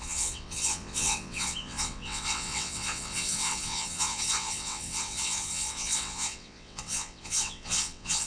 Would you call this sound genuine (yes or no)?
no